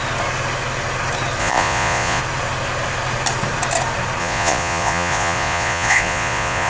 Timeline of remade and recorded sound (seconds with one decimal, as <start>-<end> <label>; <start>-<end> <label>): 0.0-1.4 recorded; 1.4-2.2 remade; 2.2-4.2 recorded; 4.2-6.7 remade